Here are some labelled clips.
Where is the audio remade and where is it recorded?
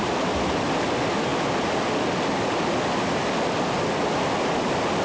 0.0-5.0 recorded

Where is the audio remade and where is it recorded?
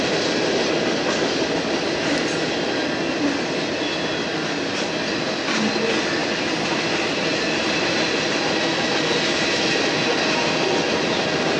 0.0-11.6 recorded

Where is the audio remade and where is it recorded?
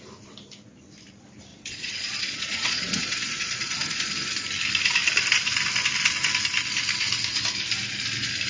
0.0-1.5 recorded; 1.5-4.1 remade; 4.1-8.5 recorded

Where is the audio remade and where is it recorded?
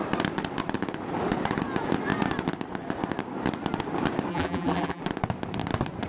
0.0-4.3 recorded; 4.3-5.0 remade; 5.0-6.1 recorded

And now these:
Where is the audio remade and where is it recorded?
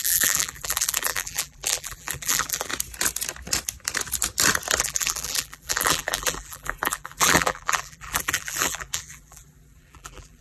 0.0-2.7 remade; 2.7-4.8 recorded; 4.8-10.4 remade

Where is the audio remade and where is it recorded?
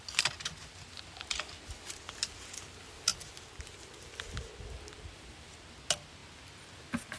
0.0-7.2 recorded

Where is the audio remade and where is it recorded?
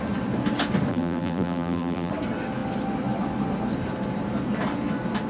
0.0-0.9 recorded; 0.9-2.1 remade; 2.1-5.3 recorded